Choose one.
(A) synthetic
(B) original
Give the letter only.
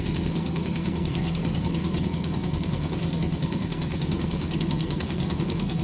A